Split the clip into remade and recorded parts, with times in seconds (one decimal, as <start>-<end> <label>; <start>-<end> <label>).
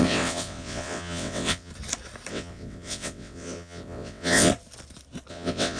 0.0-1.7 remade; 1.7-2.3 recorded; 2.3-4.5 remade; 4.5-5.3 recorded; 5.3-5.8 remade